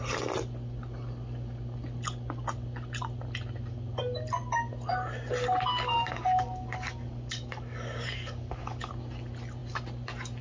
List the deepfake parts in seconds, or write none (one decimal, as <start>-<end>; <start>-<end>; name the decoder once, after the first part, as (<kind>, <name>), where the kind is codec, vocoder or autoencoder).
5.7-8.9 (codec, DAC)